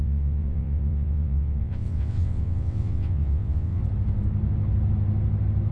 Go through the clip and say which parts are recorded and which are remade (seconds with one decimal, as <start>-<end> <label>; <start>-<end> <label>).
0.0-3.8 remade; 3.8-5.7 recorded